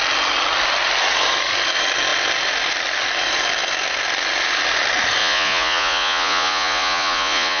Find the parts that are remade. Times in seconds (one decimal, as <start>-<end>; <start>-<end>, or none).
5.2-7.6